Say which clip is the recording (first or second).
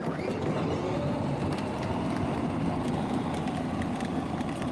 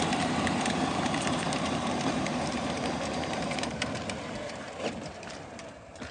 first